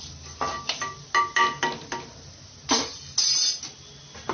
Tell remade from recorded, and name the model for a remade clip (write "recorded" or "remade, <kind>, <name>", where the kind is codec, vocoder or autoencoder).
recorded